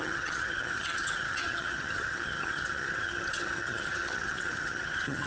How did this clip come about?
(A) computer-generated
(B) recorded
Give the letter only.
A